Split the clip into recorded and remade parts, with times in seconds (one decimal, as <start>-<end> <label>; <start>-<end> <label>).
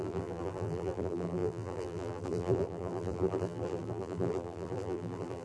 0.0-5.4 remade